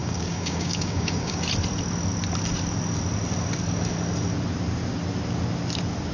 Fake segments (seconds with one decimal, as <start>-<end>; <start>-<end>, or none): 0.0-1.4